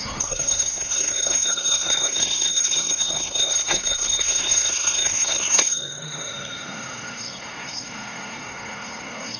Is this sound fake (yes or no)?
yes